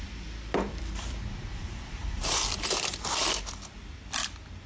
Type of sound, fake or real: fake